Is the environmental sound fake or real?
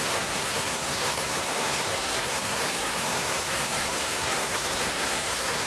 fake